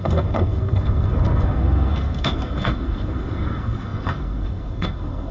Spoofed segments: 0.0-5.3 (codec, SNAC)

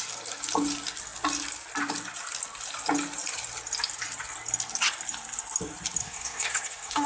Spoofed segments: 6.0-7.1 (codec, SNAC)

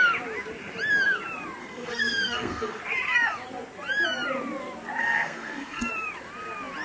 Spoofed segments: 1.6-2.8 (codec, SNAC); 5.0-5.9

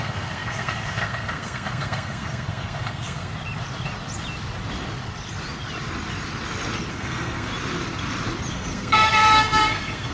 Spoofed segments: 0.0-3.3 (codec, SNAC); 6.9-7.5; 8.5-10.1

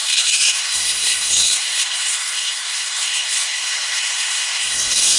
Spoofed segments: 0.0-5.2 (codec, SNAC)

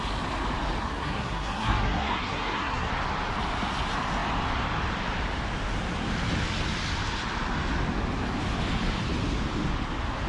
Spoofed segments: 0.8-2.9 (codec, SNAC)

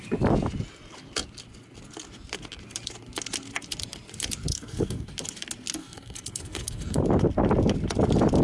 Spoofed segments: 4.5-5.1 (codec, SNAC); 5.8-7.0